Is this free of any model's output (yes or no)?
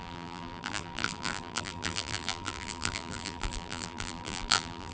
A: no